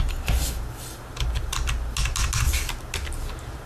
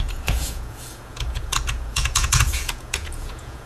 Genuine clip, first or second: first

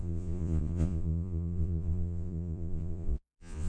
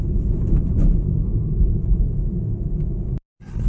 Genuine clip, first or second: second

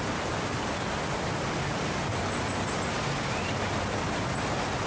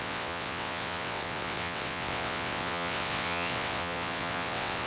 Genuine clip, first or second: first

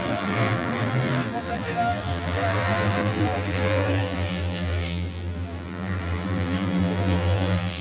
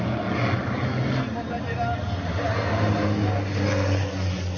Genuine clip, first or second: second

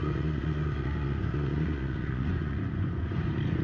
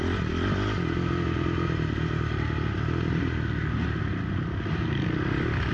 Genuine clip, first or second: second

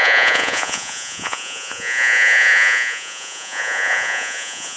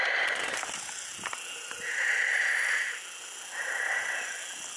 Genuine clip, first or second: second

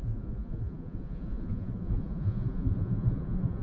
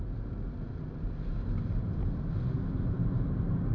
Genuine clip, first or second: second